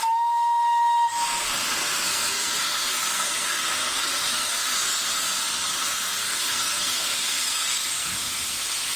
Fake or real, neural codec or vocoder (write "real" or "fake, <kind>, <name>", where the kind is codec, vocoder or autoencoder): fake, codec, SNAC